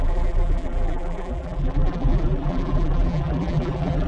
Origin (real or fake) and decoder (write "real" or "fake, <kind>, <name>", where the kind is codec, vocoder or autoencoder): fake, vocoder, BigVGAN v2